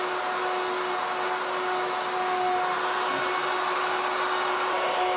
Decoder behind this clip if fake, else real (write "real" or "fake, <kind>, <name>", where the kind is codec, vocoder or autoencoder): real